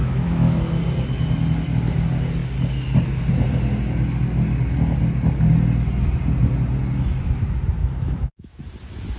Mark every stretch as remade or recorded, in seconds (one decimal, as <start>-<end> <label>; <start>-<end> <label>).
0.0-0.8 remade; 0.8-7.8 recorded; 7.8-8.6 remade; 8.6-9.2 recorded